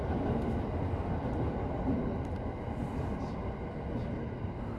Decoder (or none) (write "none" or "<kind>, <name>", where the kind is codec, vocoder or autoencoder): none